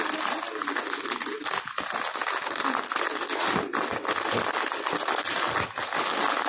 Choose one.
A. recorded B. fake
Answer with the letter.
A